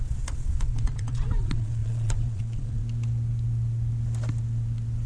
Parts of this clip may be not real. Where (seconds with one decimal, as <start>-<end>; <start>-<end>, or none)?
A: 0.0-2.8